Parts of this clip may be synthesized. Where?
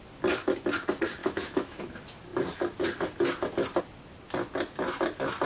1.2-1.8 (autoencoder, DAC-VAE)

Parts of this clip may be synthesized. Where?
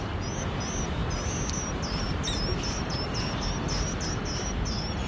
none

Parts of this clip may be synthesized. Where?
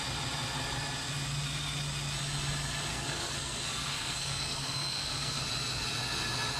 2.9-5.4 (codec, SNAC)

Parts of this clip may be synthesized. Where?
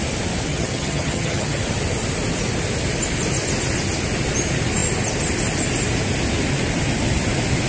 0.5-1.6 (vocoder, HiFi-GAN)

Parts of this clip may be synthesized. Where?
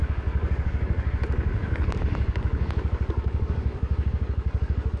0.0-5.0 (codec, DAC)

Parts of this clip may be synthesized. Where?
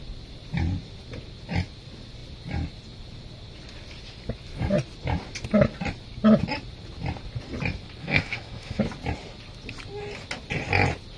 8.0-8.8 (autoencoder, DAC-VAE)